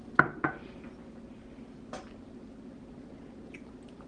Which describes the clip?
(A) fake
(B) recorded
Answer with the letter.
B